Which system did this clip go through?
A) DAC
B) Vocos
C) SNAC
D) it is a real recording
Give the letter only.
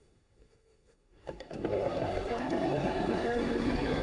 C